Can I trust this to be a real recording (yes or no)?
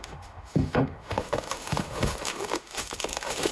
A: no